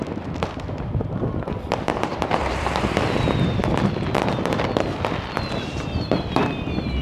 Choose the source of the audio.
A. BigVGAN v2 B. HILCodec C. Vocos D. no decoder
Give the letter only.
A